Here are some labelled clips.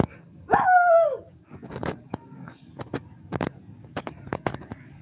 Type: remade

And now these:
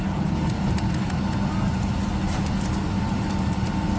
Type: recorded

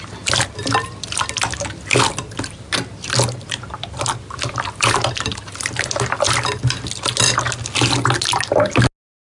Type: recorded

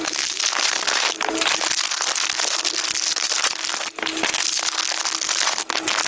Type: recorded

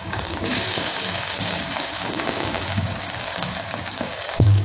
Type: remade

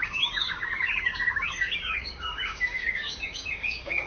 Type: remade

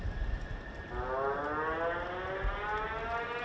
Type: recorded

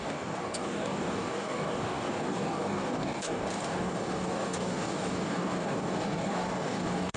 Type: remade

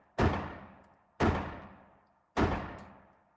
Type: recorded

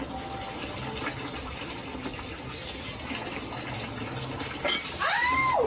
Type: recorded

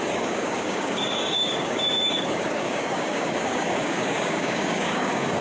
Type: remade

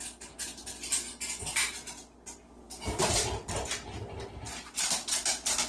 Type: recorded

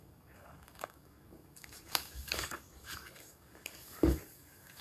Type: remade